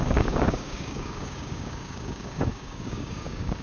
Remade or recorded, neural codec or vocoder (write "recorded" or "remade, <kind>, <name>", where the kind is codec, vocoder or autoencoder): remade, codec, DAC